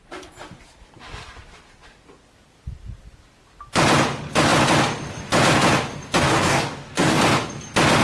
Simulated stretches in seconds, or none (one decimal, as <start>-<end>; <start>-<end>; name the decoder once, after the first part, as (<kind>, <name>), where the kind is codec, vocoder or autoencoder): 6.2-7.2 (codec, DAC)